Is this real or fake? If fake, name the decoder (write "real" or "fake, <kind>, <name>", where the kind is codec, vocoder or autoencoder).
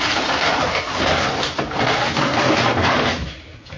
real